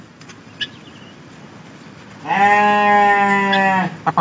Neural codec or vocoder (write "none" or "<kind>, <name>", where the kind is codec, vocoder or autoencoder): none